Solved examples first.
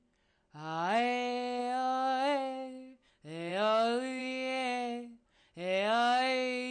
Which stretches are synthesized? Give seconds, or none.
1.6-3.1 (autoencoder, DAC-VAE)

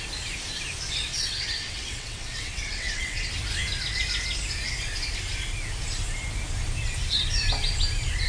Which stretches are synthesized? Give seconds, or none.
1.1-3.3 (vocoder, WaveNeXt)

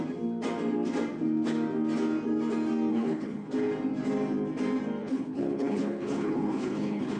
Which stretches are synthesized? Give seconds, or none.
2.9-3.5 (codec, HILCodec); 5.0-7.2

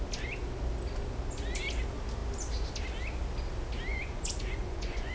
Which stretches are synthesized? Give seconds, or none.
3.9-5.1 (vocoder, Vocos)